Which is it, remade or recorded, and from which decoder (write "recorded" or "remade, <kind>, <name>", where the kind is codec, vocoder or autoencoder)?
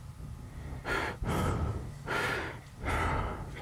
recorded